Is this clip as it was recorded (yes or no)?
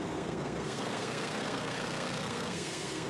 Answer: no